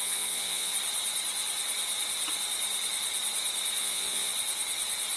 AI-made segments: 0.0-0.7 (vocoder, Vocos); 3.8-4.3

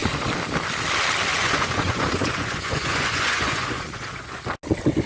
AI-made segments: 1.3-4.4 (vocoder, Vocos)

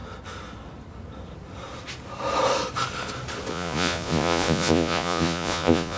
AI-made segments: 3.5-6.0 (vocoder, Vocos)

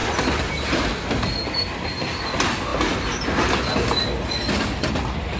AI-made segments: none

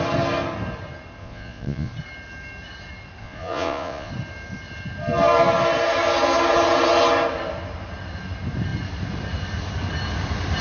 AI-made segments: 1.2-1.9 (vocoder, Vocos); 3.2-4.1